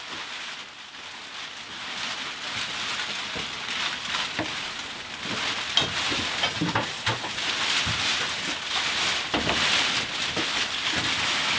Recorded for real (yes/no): yes